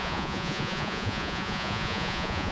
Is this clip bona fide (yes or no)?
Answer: no